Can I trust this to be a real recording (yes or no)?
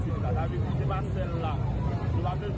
yes